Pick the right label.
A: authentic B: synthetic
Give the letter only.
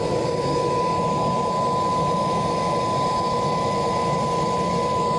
A